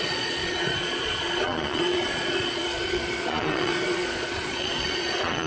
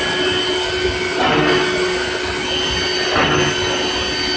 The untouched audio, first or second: second